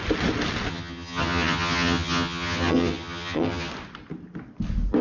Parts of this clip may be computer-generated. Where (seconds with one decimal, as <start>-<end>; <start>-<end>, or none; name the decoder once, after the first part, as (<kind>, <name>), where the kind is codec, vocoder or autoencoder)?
0.7-3.7 (vocoder, HiFi-GAN)